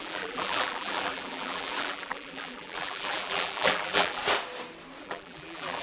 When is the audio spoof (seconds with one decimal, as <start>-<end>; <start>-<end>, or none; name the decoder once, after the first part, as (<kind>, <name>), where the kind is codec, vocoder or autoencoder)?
0.0-4.2 (vocoder, BigVGAN v2); 5.0-5.8

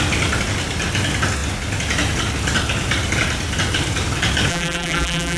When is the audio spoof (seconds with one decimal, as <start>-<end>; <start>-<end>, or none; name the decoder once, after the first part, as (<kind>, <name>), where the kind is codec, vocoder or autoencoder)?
4.5-5.4 (vocoder, BigVGAN v2)

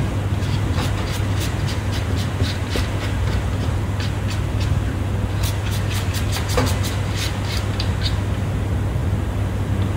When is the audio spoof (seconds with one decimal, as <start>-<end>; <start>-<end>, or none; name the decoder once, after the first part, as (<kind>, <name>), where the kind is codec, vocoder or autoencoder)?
none

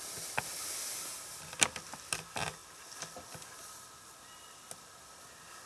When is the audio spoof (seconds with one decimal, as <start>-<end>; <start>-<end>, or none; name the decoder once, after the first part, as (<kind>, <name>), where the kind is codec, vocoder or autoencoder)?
0.9-1.4 (vocoder, BigVGAN v2)